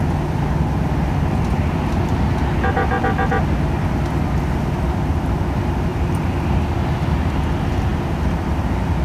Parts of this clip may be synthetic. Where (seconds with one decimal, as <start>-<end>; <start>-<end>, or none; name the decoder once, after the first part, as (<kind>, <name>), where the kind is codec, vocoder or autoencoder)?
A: none